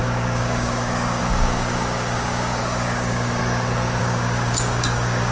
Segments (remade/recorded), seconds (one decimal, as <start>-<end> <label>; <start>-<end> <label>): 0.0-3.4 remade; 3.4-4.0 recorded; 4.0-5.3 remade